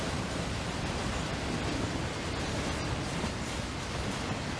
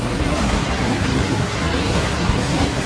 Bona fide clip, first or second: first